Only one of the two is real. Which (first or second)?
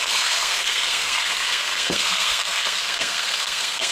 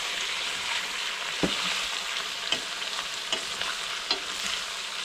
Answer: second